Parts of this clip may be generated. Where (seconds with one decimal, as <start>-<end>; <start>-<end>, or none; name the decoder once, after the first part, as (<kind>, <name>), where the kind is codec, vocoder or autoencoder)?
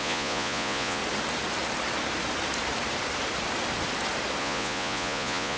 0.0-1.0 (vocoder, Vocos); 4.4-5.6